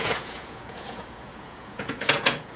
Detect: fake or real fake